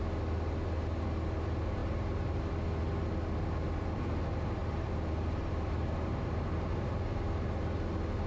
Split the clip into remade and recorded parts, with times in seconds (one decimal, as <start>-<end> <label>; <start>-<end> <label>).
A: 0.0-1.8 recorded; 1.8-2.5 remade; 2.5-4.6 recorded; 4.6-6.9 remade; 6.9-8.3 recorded